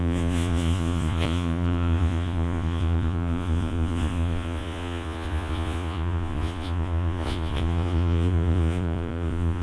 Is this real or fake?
fake